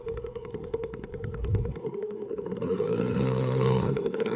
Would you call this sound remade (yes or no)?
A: yes